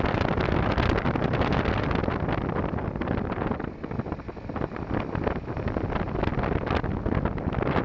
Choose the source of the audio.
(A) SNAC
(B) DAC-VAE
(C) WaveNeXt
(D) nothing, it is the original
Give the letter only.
D